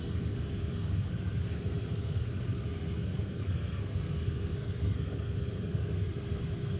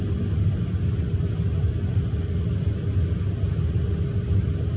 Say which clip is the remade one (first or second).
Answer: first